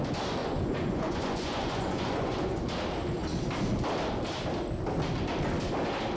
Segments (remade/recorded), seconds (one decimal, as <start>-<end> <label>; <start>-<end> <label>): 0.0-0.4 recorded; 0.4-2.6 remade; 2.6-6.2 recorded